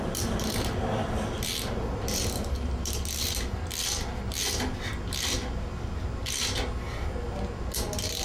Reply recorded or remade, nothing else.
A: recorded